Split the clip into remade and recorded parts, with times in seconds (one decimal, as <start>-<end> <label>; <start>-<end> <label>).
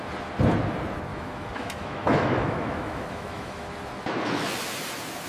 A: 0.0-1.1 recorded; 1.1-3.7 remade; 3.7-5.3 recorded